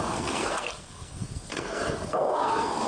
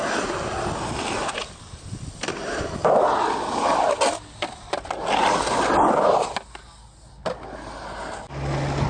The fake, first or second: first